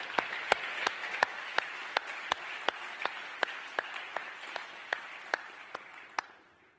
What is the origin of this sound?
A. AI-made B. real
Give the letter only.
B